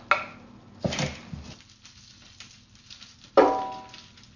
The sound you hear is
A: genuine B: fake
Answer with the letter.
A